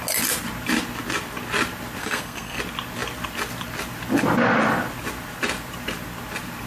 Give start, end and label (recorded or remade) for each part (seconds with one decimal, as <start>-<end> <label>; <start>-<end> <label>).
0.0-2.0 recorded; 2.0-2.6 remade; 2.6-6.7 recorded